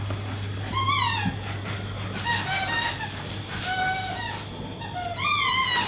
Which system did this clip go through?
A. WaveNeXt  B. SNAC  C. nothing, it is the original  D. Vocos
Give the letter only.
C